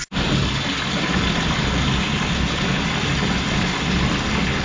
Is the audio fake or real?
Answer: real